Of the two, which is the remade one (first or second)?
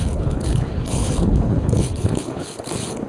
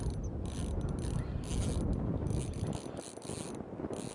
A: first